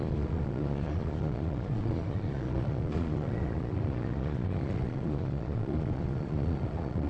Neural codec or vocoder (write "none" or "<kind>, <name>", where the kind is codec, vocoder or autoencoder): vocoder, Vocos